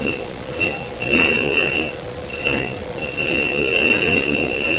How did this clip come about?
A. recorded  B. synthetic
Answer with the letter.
B